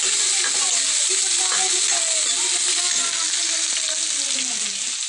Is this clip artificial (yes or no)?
no